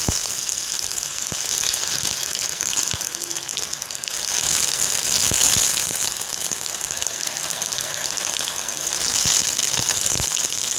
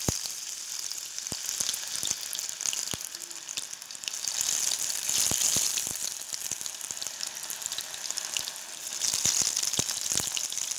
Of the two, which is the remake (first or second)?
first